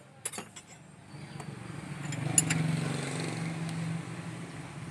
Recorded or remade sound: recorded